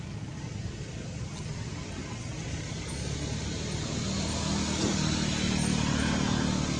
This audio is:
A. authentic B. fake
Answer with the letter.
A